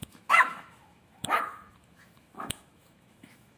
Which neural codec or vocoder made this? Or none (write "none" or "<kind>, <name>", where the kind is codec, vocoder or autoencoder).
autoencoder, DAC-VAE